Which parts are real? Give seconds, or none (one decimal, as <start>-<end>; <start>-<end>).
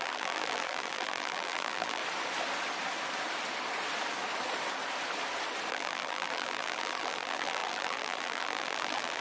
2.0-5.7